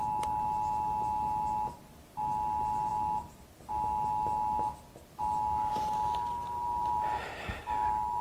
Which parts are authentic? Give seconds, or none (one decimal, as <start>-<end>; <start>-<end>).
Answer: 0.0-8.2